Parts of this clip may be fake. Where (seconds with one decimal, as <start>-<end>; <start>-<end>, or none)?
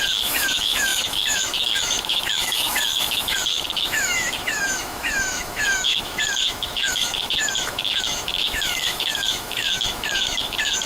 0.0-10.9